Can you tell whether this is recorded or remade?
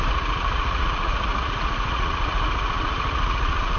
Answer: remade